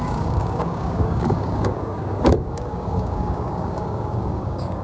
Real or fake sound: fake